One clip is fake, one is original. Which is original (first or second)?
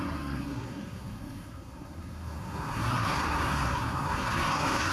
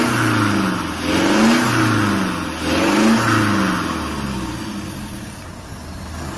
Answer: second